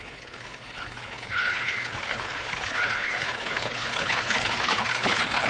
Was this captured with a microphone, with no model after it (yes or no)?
no